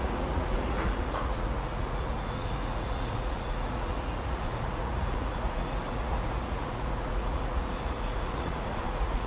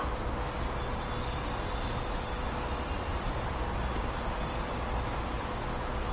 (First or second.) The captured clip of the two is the second